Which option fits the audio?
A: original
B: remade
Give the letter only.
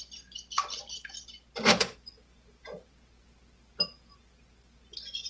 A